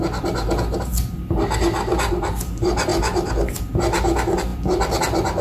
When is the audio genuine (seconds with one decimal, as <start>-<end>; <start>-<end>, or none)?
0.0-5.4